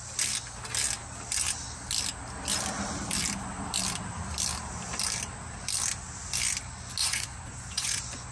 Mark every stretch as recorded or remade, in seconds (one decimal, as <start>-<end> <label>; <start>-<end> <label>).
0.0-7.0 recorded; 7.0-8.3 remade

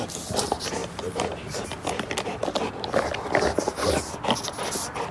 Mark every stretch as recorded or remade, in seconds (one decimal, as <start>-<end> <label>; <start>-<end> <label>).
0.0-5.1 recorded

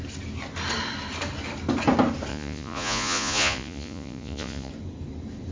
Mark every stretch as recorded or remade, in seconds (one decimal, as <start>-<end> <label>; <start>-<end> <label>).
0.0-2.3 recorded; 2.3-4.7 remade; 4.7-5.5 recorded

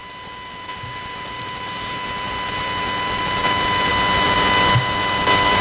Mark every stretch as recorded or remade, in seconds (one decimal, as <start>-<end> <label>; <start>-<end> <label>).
0.0-5.6 recorded

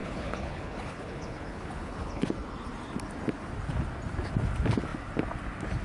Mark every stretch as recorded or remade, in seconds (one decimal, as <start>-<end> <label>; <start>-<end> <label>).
0.0-2.3 remade; 2.3-5.8 recorded